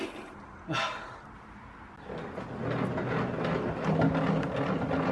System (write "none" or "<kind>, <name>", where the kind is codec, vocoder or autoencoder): none